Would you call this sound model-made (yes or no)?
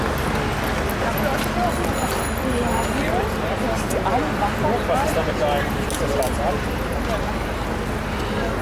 no